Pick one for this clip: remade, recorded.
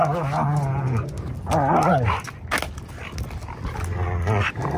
recorded